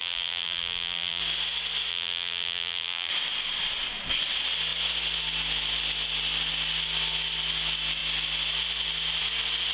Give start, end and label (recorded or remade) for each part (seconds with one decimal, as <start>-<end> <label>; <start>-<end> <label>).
0.0-1.2 remade; 1.2-1.9 recorded; 1.9-3.1 remade; 3.1-9.7 recorded